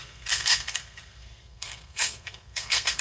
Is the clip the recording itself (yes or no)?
no